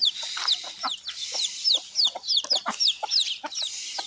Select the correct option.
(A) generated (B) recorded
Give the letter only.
B